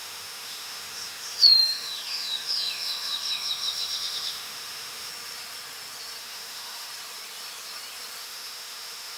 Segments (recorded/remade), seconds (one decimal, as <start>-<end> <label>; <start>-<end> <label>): 0.0-5.1 remade; 5.1-6.2 recorded; 6.2-6.9 remade; 6.9-8.2 recorded; 8.2-9.2 remade